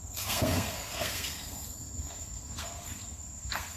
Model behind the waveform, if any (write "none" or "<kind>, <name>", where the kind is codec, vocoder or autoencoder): codec, SNAC